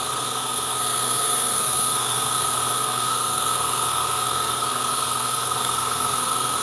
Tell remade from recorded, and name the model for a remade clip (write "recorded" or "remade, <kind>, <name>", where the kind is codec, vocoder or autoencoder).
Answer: remade, codec, SNAC